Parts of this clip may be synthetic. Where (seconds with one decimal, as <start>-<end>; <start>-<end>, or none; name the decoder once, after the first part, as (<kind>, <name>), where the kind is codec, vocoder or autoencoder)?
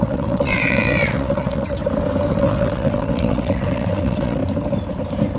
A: 0.0-1.8 (vocoder, WaveNeXt); 2.3-4.4